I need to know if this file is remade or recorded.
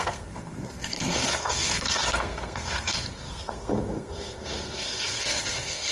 remade